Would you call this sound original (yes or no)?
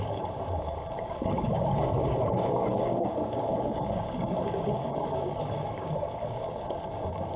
no